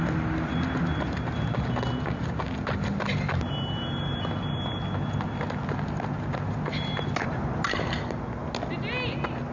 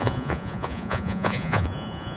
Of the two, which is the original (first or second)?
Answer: first